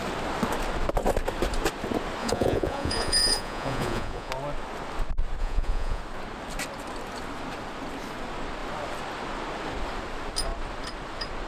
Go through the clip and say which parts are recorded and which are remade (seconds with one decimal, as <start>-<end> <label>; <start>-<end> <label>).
0.0-2.2 recorded; 2.2-4.3 remade; 4.3-5.4 recorded; 5.4-6.0 remade; 6.0-11.5 recorded